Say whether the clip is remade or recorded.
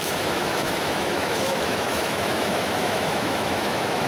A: remade